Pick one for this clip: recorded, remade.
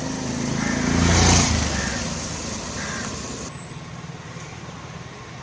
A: recorded